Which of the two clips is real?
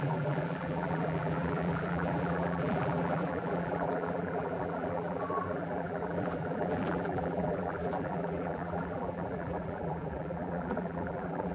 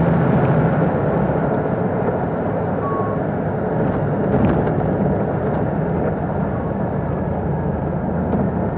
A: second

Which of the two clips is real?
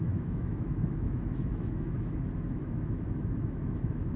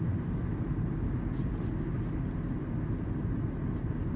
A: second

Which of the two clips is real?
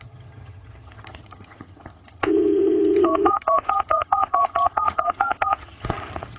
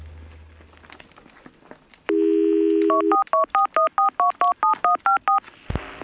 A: second